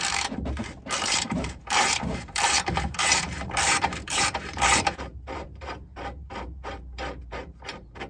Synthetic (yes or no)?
yes